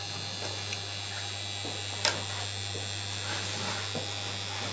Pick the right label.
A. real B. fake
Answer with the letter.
A